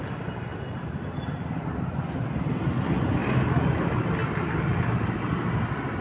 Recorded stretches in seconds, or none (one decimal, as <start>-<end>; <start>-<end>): 0.0-6.0